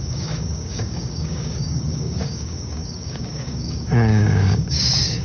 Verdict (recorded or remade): remade